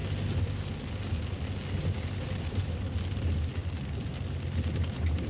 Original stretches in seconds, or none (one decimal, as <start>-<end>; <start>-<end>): 0.0-5.3